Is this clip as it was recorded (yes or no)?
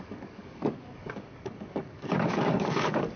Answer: no